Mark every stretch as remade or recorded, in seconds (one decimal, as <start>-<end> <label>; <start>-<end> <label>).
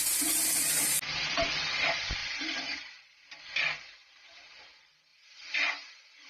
0.0-2.2 recorded; 2.2-3.4 remade; 3.4-5.1 recorded; 5.1-6.3 remade